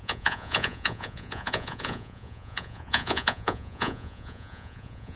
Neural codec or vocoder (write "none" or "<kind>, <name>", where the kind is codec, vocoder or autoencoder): vocoder, Vocos